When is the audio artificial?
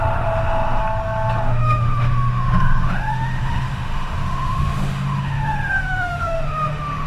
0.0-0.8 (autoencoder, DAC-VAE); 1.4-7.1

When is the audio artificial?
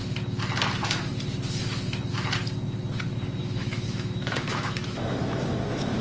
3.4-6.0 (autoencoder, DAC-VAE)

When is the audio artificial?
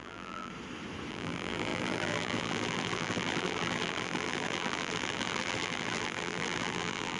0.0-0.5 (vocoder, BigVGAN v2); 1.1-7.2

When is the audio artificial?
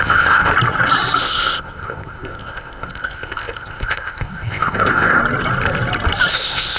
0.0-0.5 (codec, ZipCodec); 1.2-5.2; 6.3-6.8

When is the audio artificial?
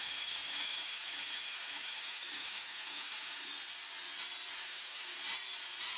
0.0-3.5 (autoencoder, DAC-VAE); 4.6-5.2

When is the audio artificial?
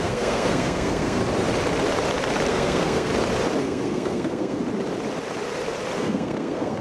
0.0-1.2 (codec, SNAC); 2.5-3.1; 3.6-4.6; 6.0-6.8